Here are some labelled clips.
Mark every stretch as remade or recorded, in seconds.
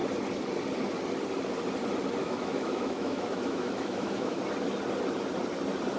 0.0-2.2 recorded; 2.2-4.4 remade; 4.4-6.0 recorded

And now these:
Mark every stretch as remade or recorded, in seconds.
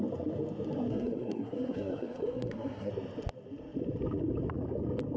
0.0-0.9 recorded; 0.9-2.9 remade; 2.9-5.2 recorded